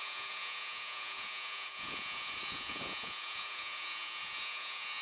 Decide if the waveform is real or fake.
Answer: fake